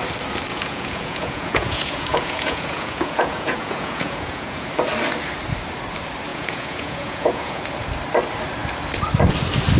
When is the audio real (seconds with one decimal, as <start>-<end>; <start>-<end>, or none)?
0.0-0.5; 4.7-6.3; 7.6-9.8